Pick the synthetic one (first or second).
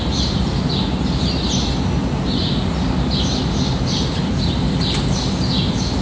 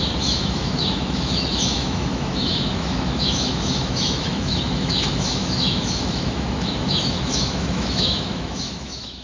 second